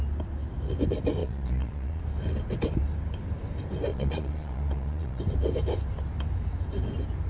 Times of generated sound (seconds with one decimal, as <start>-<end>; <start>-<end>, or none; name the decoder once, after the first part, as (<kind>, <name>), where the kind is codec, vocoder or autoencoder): 1.2-2.0 (vocoder, Vocos); 3.9-5.2